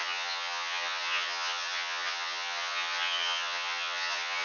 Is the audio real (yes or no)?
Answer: no